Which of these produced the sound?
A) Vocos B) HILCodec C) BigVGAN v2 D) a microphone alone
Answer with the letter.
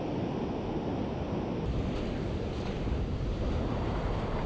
D